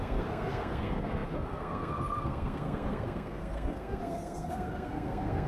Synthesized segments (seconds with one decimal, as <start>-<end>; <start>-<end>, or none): 0.0-5.5

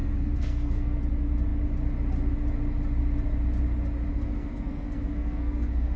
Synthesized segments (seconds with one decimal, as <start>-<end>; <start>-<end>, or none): 0.0-1.0; 4.1-6.0